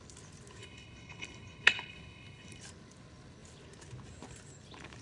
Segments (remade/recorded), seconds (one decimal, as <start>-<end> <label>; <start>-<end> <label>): 0.0-0.6 recorded; 0.6-2.6 remade; 2.6-5.0 recorded

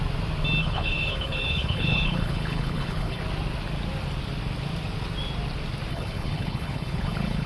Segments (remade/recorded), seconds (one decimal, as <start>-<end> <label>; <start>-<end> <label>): 0.0-0.6 recorded; 0.6-3.2 remade; 3.2-5.9 recorded; 5.9-7.5 remade

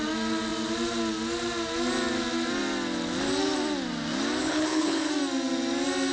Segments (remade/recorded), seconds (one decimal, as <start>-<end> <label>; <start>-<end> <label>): 0.0-4.4 recorded; 4.4-5.1 remade; 5.1-6.1 recorded

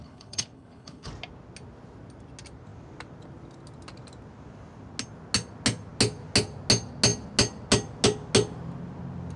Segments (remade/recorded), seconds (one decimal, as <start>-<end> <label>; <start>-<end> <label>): 0.0-1.1 remade; 1.1-9.4 recorded

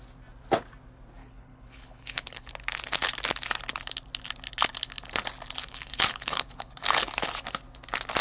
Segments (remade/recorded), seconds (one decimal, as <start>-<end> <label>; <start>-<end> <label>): 0.0-1.2 recorded; 1.2-2.5 remade; 2.5-5.6 recorded; 5.6-6.8 remade; 6.8-8.2 recorded

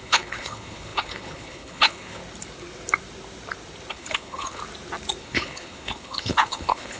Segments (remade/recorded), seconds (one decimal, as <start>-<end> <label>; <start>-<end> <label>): 0.0-2.2 remade; 2.2-3.9 recorded; 3.9-4.6 remade; 4.6-5.2 recorded; 5.2-7.0 remade